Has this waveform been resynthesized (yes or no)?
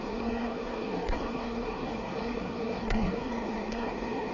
yes